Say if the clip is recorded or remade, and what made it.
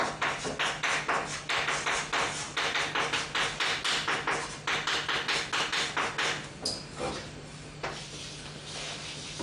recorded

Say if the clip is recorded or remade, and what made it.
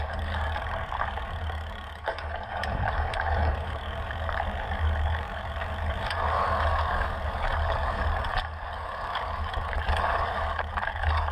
remade, codec, DAC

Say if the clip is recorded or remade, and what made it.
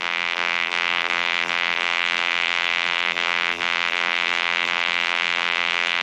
remade, vocoder, BigVGAN v2